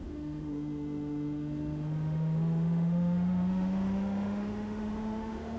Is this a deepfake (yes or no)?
yes